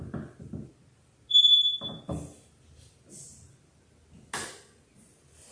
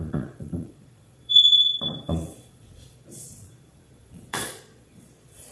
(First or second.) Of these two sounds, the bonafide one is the first